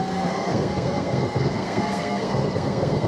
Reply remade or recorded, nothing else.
remade